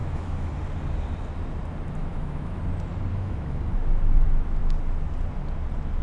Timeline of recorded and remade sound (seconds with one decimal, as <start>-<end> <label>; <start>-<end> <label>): 0.0-0.5 remade; 0.5-2.0 recorded; 2.0-2.6 remade; 2.6-3.1 recorded; 3.1-3.6 remade; 3.6-6.0 recorded